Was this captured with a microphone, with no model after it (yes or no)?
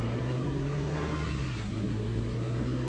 no